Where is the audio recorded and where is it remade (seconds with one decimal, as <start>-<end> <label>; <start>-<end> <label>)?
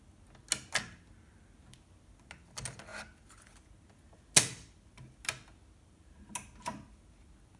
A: 0.0-7.6 recorded